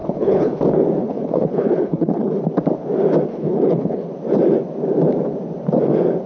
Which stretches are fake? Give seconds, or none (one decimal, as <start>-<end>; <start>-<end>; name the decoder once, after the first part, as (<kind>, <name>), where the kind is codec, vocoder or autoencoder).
0.0-0.6 (codec, HILCodec); 1.0-2.4; 3.3-4.1